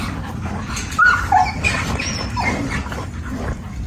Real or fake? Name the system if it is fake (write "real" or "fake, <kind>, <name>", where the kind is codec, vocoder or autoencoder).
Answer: real